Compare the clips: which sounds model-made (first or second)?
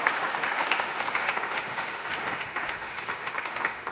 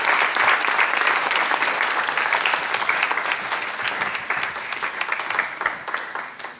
first